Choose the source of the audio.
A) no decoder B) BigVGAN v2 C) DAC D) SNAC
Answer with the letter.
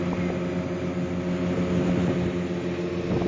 A